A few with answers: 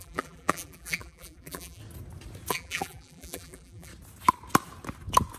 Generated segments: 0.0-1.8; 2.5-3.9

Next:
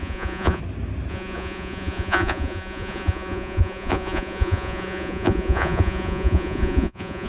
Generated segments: 0.0-0.6; 1.1-7.3

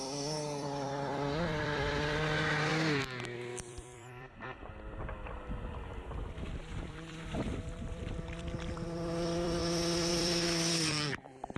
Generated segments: 0.0-2.7; 3.7-9.6; 10.1-11.6

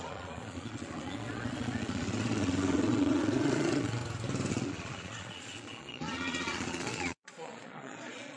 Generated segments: 0.0-4.0; 4.5-8.4

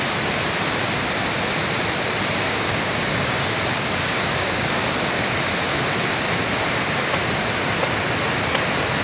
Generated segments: 2.4-4.8